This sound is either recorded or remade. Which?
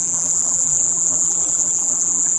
remade